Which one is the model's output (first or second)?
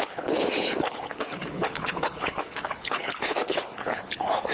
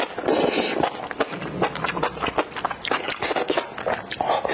first